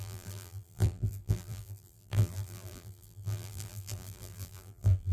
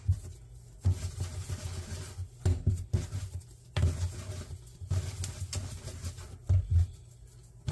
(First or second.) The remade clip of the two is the first